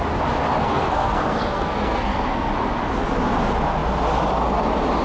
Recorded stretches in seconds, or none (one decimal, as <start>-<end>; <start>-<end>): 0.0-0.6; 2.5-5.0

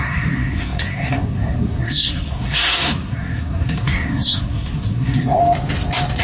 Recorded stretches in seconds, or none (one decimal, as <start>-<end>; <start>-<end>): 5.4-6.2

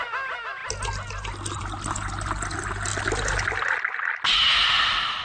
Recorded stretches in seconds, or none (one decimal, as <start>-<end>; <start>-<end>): 0.0-5.2

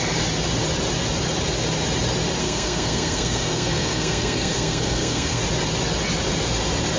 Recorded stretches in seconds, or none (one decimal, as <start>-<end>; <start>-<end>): 0.0-2.4; 5.4-7.0

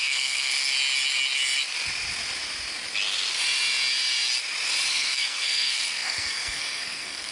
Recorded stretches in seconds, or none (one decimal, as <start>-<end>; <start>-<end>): 0.5-4.9

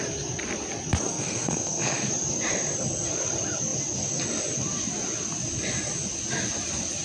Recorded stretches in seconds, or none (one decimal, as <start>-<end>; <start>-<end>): 0.0-1.1; 2.1-7.0

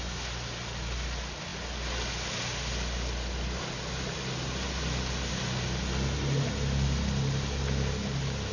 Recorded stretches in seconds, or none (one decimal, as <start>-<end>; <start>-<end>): 0.0-8.5